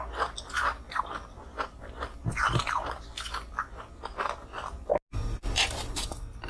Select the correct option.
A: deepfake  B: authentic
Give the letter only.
B